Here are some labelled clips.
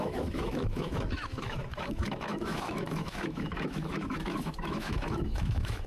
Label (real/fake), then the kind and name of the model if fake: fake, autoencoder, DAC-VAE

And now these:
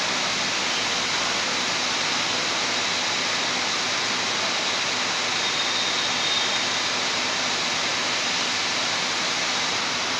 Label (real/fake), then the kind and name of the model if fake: real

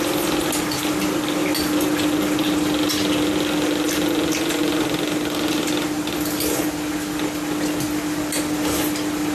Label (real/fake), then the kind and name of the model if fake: real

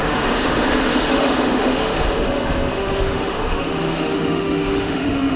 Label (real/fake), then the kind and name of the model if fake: fake, autoencoder, DAC-VAE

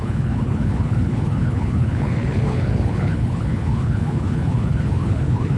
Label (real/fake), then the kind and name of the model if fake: fake, codec, HILCodec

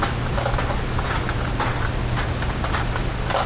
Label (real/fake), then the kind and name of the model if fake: real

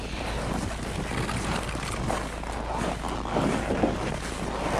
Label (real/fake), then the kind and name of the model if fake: real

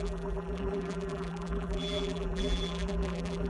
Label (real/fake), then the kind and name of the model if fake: fake, vocoder, BigVGAN v2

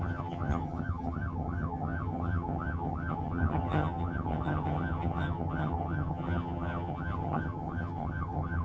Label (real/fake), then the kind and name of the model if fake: fake, vocoder, HiFi-GAN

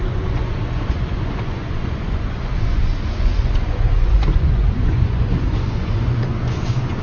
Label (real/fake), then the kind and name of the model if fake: fake, vocoder, Vocos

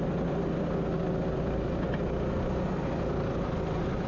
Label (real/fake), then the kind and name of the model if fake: real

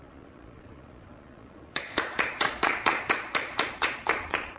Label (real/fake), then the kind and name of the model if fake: fake, vocoder, Vocos